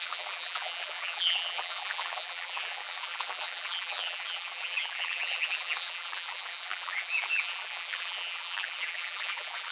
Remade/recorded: remade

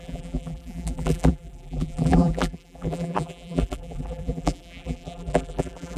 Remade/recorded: remade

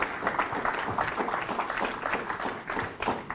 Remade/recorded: recorded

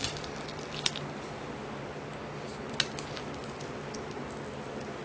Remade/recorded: recorded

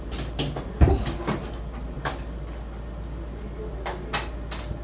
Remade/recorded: recorded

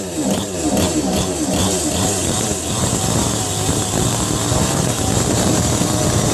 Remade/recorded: remade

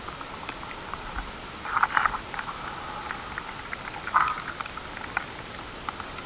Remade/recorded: remade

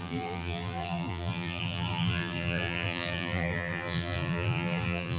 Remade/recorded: remade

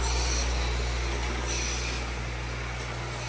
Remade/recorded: recorded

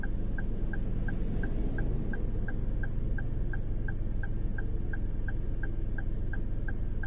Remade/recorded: recorded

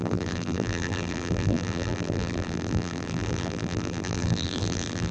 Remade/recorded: remade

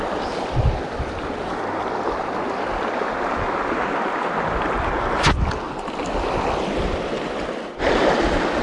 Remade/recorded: recorded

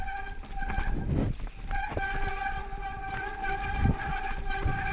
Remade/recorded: recorded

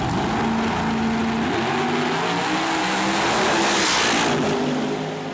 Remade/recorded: recorded